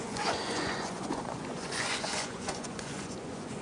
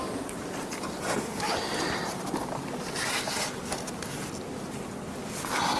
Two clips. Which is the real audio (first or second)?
second